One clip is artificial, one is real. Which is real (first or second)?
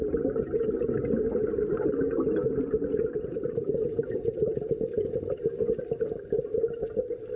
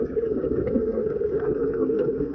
first